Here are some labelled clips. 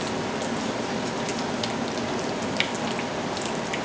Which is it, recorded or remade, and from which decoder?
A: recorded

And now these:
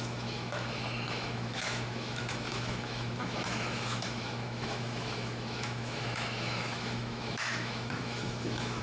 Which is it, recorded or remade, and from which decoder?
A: remade, autoencoder, DAC-VAE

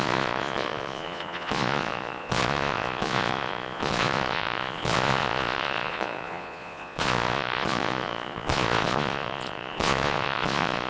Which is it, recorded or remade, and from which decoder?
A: remade, vocoder, Vocos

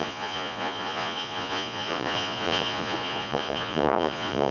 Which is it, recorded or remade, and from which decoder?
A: remade, vocoder, Vocos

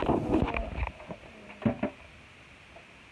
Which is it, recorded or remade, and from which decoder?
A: recorded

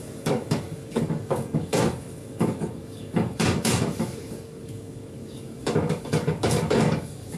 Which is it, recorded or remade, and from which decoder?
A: remade, codec, DAC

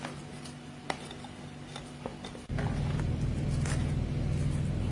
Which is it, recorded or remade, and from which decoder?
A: recorded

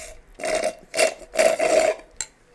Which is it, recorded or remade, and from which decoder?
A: recorded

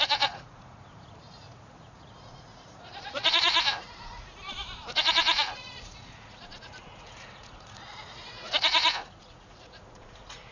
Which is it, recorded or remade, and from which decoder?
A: remade, vocoder, Vocos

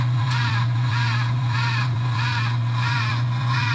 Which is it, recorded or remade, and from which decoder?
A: remade, vocoder, Vocos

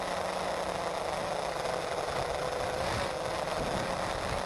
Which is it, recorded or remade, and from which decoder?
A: recorded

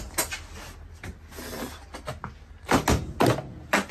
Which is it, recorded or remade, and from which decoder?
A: recorded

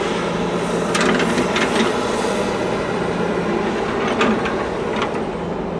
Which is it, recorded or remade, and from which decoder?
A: recorded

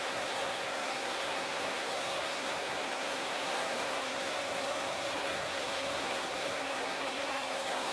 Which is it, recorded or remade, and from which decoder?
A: remade, codec, SNAC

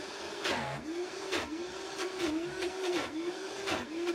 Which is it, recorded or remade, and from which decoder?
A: remade, codec, SNAC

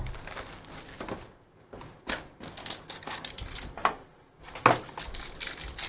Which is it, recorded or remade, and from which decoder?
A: recorded